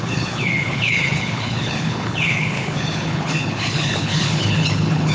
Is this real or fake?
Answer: fake